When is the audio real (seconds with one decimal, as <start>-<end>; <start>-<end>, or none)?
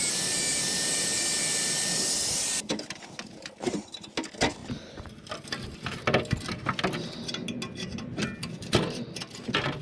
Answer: 0.0-9.8